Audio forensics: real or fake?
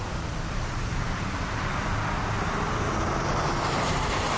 real